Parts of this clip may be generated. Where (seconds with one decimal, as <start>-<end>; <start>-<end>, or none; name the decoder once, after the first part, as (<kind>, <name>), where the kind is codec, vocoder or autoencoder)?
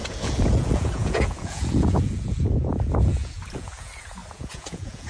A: 0.0-5.1 (vocoder, Vocos)